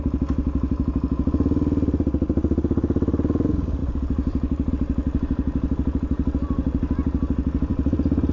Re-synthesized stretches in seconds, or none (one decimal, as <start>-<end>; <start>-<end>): 3.8-4.7; 7.7-8.3